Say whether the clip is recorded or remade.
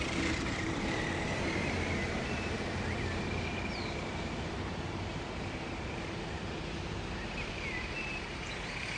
remade